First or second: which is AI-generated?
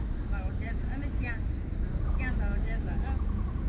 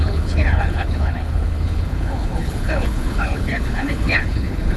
second